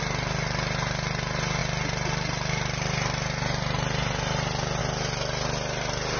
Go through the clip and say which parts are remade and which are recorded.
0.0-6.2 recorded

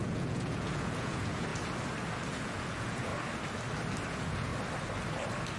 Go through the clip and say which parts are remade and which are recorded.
0.0-1.5 remade; 1.5-2.3 recorded; 2.3-3.1 remade; 3.1-4.1 recorded; 4.1-4.5 remade; 4.5-5.6 recorded

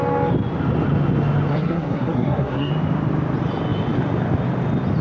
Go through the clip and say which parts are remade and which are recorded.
0.0-1.5 recorded; 1.5-2.7 remade; 2.7-5.0 recorded

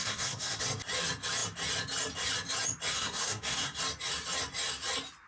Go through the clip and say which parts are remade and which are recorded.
0.0-0.6 remade; 0.6-2.9 recorded; 2.9-3.8 remade; 3.8-5.3 recorded

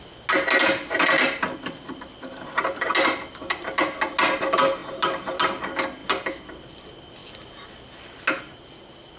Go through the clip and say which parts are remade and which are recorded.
0.0-9.2 recorded

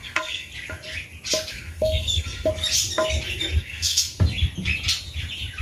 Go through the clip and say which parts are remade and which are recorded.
0.0-0.5 remade; 0.5-1.5 recorded; 1.5-2.5 remade; 2.5-3.6 recorded; 3.6-4.2 remade; 4.2-5.6 recorded

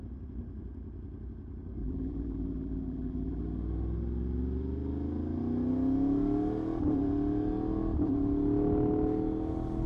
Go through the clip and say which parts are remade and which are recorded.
0.0-1.8 recorded; 1.8-3.4 remade; 3.4-9.9 recorded

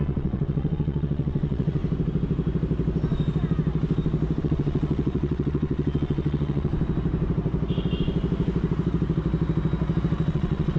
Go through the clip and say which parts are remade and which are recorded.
0.0-1.8 remade; 1.8-4.4 recorded; 4.4-6.7 remade; 6.7-10.3 recorded; 10.3-10.8 remade